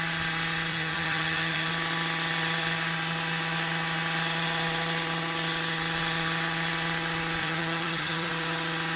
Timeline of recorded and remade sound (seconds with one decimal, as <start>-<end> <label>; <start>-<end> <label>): 0.0-0.7 recorded; 0.7-1.7 remade; 1.7-7.4 recorded; 7.4-8.3 remade; 8.3-9.0 recorded